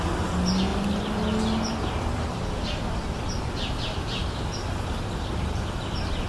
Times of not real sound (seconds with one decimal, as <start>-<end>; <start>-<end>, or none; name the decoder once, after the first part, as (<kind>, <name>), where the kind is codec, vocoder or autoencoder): none